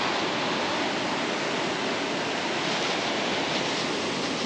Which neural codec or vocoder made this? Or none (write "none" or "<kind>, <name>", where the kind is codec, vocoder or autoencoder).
none